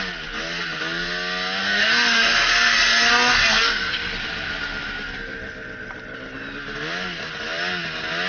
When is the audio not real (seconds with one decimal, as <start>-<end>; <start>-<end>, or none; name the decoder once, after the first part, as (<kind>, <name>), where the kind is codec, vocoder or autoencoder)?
1.6-4.1 (codec, SNAC)